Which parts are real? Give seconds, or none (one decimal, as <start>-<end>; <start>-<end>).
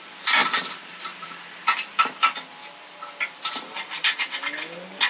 0.0-0.4; 3.5-5.1